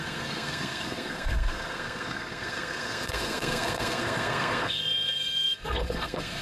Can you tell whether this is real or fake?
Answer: fake